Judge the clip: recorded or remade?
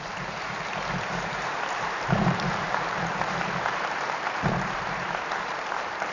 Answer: remade